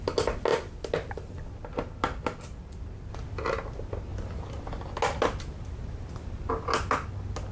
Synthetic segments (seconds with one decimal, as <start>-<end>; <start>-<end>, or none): none